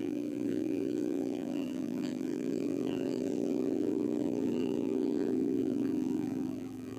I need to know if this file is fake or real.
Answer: fake